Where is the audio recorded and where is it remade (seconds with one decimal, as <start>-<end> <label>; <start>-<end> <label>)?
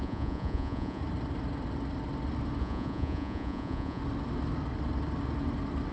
0.0-1.0 remade; 1.0-2.6 recorded; 2.6-4.0 remade; 4.0-5.9 recorded